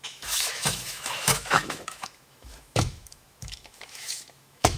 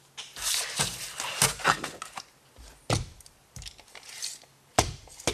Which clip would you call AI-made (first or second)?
first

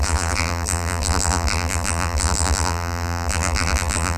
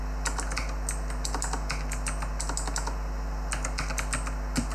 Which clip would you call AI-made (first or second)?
first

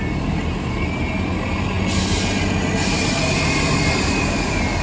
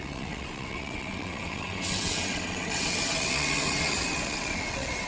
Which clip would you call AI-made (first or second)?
second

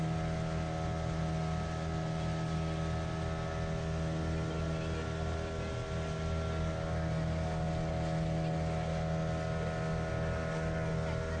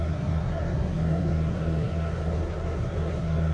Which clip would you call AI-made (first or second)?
second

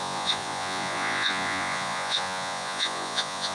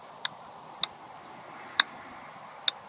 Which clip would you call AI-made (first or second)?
first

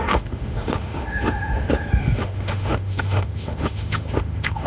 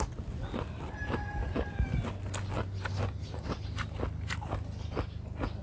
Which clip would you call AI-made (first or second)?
first